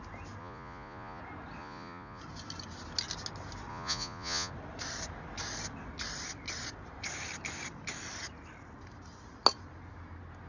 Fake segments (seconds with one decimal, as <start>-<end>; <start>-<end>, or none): 0.4-1.2; 1.6-2.2; 3.7-4.5